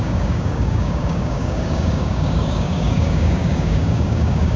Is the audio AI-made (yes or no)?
yes